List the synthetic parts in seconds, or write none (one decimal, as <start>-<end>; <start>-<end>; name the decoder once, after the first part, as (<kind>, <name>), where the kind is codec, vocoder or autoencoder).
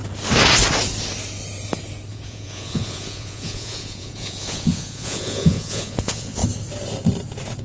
2.1-6.4 (vocoder, Vocos)